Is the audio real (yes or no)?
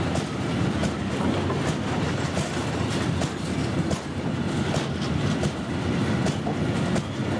yes